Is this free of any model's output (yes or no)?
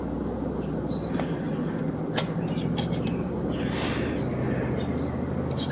yes